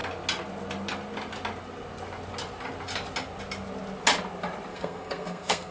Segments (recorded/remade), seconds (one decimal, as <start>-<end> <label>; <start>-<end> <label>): 0.0-4.7 recorded; 4.7-5.7 remade